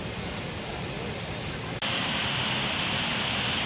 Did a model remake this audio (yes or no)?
no